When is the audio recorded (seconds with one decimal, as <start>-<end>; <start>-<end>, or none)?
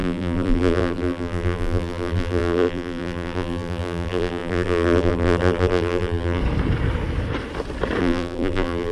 6.4-8.0